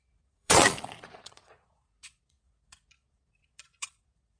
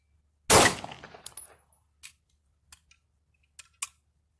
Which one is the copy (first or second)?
first